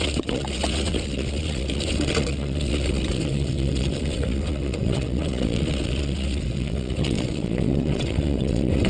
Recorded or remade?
remade